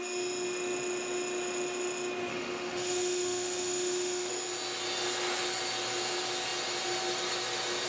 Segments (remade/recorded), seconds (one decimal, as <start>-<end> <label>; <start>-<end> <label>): 0.0-2.3 recorded; 2.3-4.3 remade; 4.3-7.9 recorded

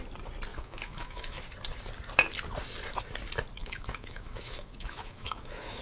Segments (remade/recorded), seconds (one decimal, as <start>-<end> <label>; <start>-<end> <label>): 0.0-0.5 recorded; 0.5-1.4 remade; 1.4-3.6 recorded; 3.6-5.8 remade

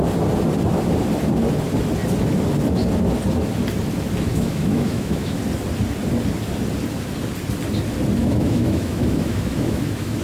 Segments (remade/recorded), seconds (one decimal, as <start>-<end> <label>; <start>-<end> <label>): 0.0-4.3 recorded; 4.3-5.4 remade; 5.4-8.2 recorded; 8.2-10.2 remade

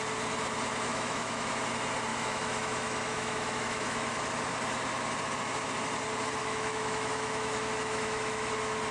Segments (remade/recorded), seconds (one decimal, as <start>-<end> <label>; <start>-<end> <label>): 0.0-0.9 recorded; 0.9-1.5 remade; 1.5-2.1 recorded; 2.1-4.3 remade; 4.3-6.4 recorded; 6.4-8.5 remade; 8.5-8.9 recorded

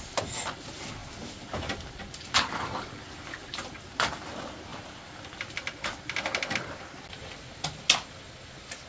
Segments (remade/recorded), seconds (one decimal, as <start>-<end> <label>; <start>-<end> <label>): 0.0-8.9 recorded

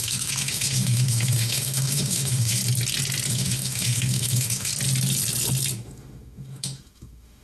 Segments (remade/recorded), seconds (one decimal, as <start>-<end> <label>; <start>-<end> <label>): 0.0-2.6 remade; 2.6-3.3 recorded; 3.3-4.7 remade; 4.7-5.8 recorded; 5.8-7.4 remade

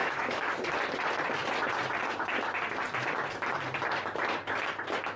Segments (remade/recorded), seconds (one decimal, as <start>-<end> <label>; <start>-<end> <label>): 0.0-0.6 remade; 0.6-5.2 recorded